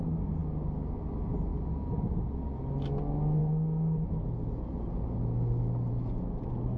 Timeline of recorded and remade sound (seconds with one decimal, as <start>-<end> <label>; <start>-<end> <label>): 0.0-6.8 recorded